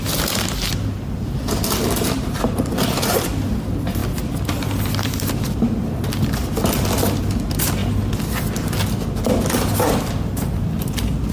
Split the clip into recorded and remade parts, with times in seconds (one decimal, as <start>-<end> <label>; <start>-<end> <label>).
0.0-11.3 recorded